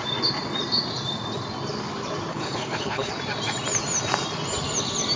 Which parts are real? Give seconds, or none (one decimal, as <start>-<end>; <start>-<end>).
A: 0.0-2.3; 3.1-5.2